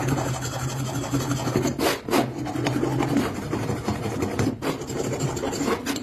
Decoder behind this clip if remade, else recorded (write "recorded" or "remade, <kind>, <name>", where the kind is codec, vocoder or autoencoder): recorded